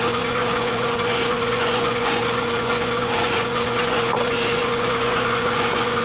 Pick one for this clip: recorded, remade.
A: remade